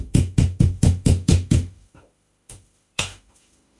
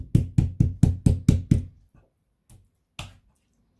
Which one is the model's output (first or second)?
first